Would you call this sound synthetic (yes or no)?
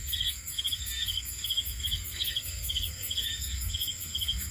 yes